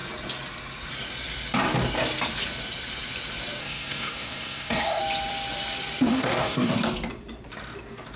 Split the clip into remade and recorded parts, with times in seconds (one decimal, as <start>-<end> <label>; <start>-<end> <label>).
0.0-3.6 recorded; 3.6-5.0 remade; 5.0-6.1 recorded; 6.1-6.7 remade; 6.7-8.2 recorded